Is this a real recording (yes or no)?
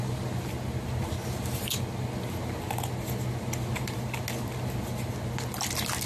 yes